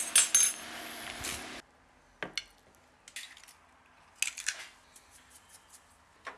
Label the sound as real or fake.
real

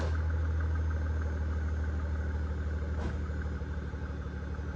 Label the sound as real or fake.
real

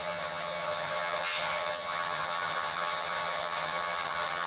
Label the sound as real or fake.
fake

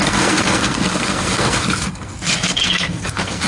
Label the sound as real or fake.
fake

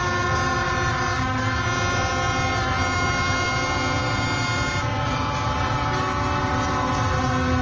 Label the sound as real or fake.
real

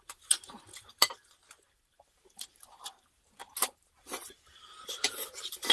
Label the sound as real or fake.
fake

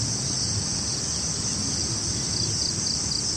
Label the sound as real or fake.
fake